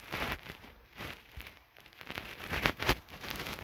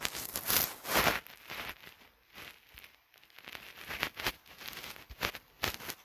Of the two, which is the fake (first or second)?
first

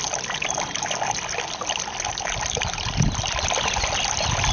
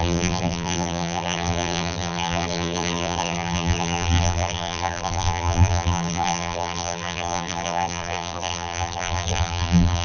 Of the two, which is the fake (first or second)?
second